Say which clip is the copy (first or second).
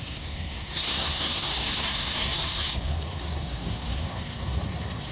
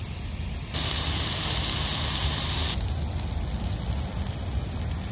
first